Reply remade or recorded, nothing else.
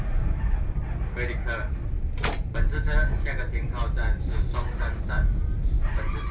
recorded